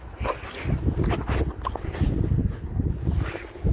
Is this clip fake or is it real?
real